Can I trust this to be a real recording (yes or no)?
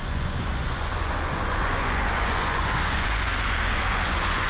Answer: no